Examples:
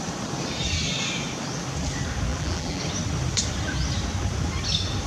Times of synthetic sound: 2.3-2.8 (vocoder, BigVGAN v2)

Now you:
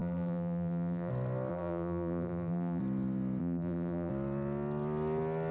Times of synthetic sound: 0.0-1.1 (vocoder, BigVGAN v2); 1.5-2.8; 3.4-4.1

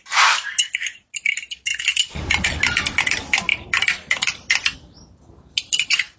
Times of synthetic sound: 1.7-2.6 (vocoder, BigVGAN v2); 3.5-4.7

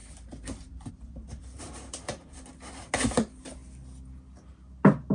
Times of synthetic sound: 0.0-0.9 (vocoder, BigVGAN v2); 1.4-2.5

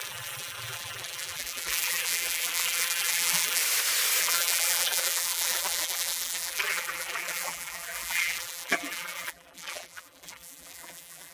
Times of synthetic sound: 0.0-3.6 (vocoder, BigVGAN v2); 4.2-11.3

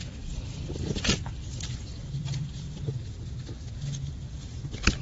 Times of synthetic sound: 0.0-2.9 (vocoder, BigVGAN v2); 4.2-5.0

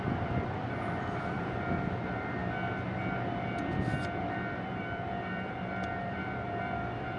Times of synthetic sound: 0.0-2.4 (vocoder, BigVGAN v2); 4.2-7.2